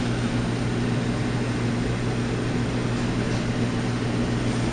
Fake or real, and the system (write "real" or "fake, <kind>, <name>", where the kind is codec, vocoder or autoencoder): real